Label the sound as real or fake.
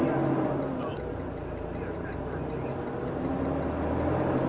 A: real